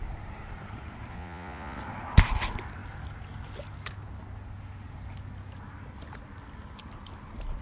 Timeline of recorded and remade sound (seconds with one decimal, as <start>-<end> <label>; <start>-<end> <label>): 0.0-1.1 recorded; 1.1-1.8 remade; 1.8-7.6 recorded